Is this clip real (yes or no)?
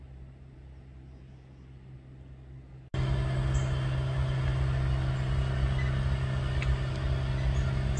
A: yes